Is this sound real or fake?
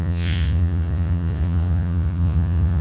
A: fake